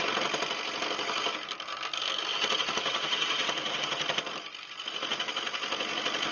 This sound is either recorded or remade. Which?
recorded